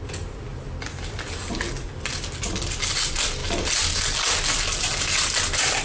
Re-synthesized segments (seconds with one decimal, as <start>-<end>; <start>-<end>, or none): none